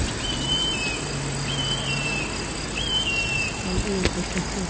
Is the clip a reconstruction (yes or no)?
no